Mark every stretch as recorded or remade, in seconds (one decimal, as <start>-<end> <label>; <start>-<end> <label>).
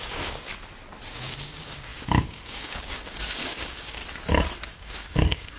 0.0-0.5 remade; 0.5-1.1 recorded; 1.1-4.0 remade; 4.0-4.7 recorded; 4.7-5.6 remade